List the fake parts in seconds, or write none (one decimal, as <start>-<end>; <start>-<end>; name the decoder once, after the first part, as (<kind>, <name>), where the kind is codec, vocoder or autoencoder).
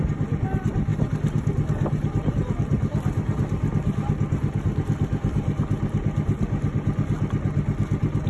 none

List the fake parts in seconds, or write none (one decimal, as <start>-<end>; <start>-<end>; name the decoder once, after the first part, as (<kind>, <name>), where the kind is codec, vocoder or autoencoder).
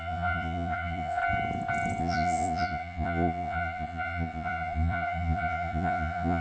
0.0-1.2 (vocoder, Vocos); 2.0-6.4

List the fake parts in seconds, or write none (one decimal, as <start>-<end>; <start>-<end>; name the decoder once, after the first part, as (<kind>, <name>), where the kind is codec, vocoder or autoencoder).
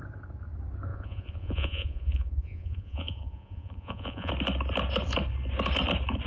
0.9-4.3 (vocoder, Vocos)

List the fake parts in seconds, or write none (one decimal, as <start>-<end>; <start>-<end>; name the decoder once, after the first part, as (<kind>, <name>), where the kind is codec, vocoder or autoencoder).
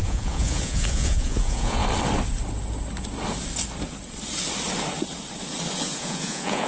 0.0-1.8 (vocoder, Vocos); 5.8-6.7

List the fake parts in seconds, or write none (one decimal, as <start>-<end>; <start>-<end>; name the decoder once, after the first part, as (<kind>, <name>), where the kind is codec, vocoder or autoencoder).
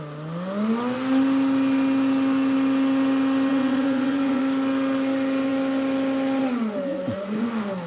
3.5-4.4 (vocoder, Vocos); 6.9-7.5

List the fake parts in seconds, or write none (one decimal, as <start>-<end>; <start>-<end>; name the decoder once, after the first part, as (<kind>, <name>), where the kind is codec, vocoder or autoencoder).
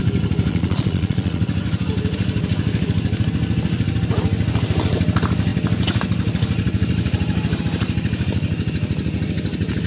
0.5-1.4 (vocoder, Vocos)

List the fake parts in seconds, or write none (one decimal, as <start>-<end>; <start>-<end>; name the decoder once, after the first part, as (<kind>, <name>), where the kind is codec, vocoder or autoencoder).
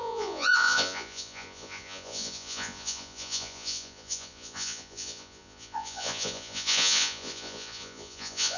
0.0-8.6 (vocoder, Vocos)